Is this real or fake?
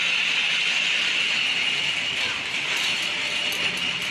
real